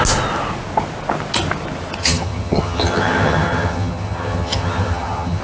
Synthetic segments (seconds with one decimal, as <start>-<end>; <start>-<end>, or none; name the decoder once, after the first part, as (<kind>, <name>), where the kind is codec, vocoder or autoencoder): 2.0-5.4 (vocoder, HiFi-GAN)